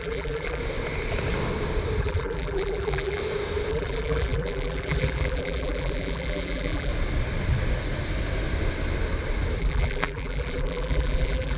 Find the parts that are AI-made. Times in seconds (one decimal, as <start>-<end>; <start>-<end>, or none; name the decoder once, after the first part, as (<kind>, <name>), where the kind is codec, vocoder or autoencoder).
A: 0.0-0.6 (vocoder, BigVGAN v2); 2.0-3.2; 3.7-6.9; 9.6-11.6